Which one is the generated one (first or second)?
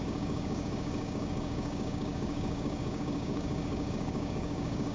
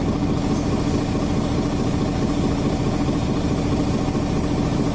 first